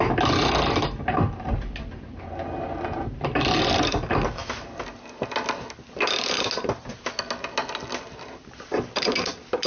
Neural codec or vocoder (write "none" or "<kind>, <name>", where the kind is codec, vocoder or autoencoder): none